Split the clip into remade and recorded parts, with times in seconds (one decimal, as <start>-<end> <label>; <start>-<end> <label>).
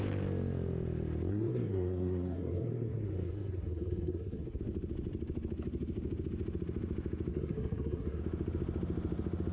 0.0-1.3 recorded; 1.3-4.6 remade; 4.6-7.3 recorded; 7.3-8.2 remade; 8.2-9.5 recorded